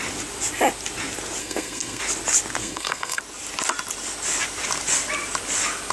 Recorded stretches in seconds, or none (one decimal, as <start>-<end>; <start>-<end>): 0.0-1.4; 2.0-2.6; 3.2-5.9